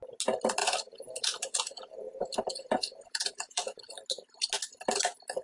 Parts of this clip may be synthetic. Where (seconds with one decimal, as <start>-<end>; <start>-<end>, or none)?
0.6-3.8